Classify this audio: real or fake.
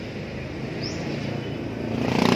real